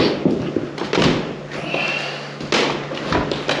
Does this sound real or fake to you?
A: real